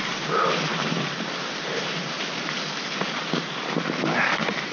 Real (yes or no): yes